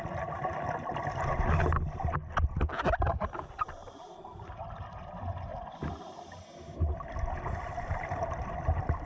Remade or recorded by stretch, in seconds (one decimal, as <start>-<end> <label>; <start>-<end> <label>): 0.0-3.8 recorded; 3.8-4.5 remade; 4.5-5.5 recorded; 5.5-8.5 remade; 8.5-9.1 recorded

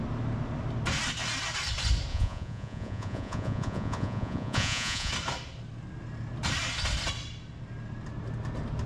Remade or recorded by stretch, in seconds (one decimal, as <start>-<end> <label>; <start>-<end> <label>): 0.0-2.1 recorded; 2.1-5.1 remade; 5.1-8.9 recorded

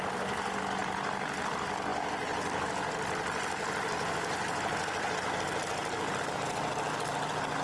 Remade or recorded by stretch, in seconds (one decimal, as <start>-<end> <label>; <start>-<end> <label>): 0.0-7.6 recorded

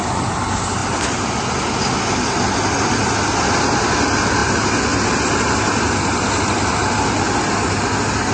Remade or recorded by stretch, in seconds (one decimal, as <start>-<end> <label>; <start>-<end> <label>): 0.0-8.3 recorded

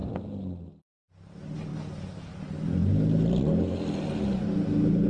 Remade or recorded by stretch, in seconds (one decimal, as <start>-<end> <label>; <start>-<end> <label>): 0.0-5.1 recorded

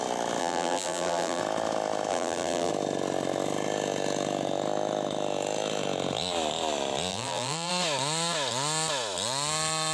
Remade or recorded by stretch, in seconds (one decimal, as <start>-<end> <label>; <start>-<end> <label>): 0.0-0.4 recorded; 0.4-1.4 remade; 1.4-2.1 recorded; 2.1-2.7 remade; 2.7-7.1 recorded; 7.1-7.7 remade; 7.7-9.9 recorded

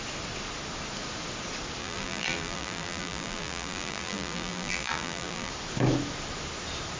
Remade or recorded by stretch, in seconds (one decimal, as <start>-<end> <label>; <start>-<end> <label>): 0.0-1.8 recorded; 1.8-5.5 remade; 5.5-7.0 recorded